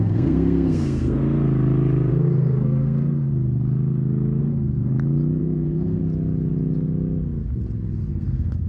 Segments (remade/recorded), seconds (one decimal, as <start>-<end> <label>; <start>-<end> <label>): 0.0-1.2 remade; 1.2-2.1 recorded; 2.1-3.3 remade; 3.3-4.4 recorded; 4.4-4.9 remade; 4.9-5.4 recorded; 5.4-6.0 remade; 6.0-8.1 recorded; 8.1-8.7 remade

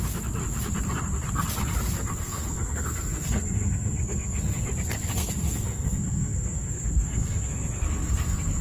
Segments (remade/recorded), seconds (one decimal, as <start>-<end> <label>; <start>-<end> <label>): 0.0-2.1 recorded; 2.1-4.6 remade; 4.6-5.1 recorded; 5.1-8.6 remade

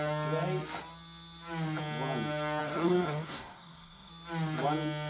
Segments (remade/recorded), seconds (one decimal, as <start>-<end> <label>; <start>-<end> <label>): 0.0-2.6 recorded; 2.6-4.1 remade; 4.1-5.1 recorded

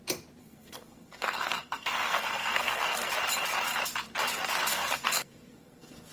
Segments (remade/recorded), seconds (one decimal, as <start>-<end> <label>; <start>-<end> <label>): 0.0-0.4 recorded; 0.4-3.1 remade; 3.1-4.7 recorded; 4.7-6.1 remade

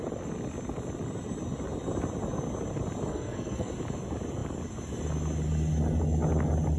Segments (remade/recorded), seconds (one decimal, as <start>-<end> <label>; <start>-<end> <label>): 0.0-3.1 recorded; 3.1-3.7 remade; 3.7-6.8 recorded

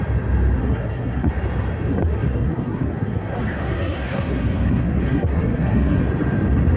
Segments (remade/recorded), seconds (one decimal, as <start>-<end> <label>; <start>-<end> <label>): 0.0-0.6 recorded; 0.6-1.3 remade; 1.3-1.9 recorded; 1.9-6.0 remade; 6.0-6.8 recorded

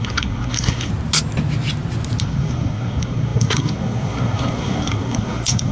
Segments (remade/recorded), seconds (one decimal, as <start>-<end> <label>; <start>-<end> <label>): 0.0-0.9 remade; 0.9-2.2 recorded; 2.2-5.7 remade